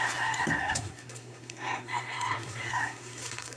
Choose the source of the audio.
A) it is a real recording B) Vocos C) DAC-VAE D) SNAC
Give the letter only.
D